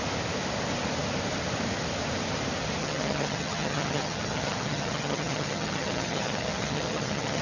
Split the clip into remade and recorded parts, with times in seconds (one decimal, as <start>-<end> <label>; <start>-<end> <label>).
0.0-2.8 recorded; 2.8-7.4 remade